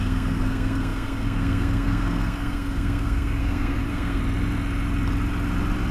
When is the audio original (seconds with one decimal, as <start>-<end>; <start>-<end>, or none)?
4.2-5.9